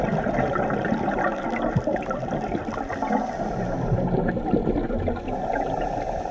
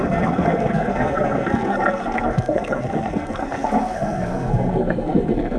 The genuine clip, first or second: first